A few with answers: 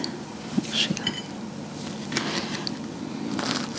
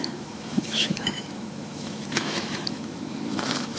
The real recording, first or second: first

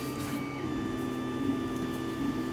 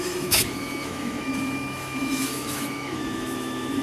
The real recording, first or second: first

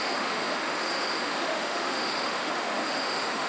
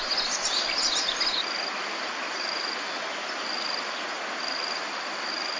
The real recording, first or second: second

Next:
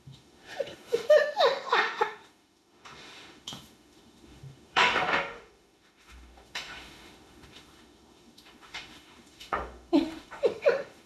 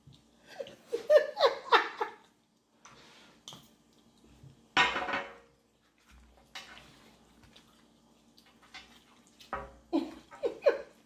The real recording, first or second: second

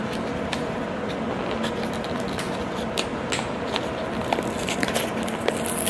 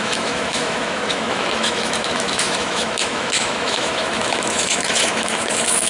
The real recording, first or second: first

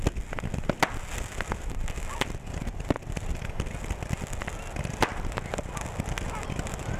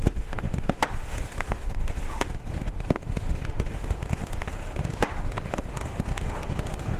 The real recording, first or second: first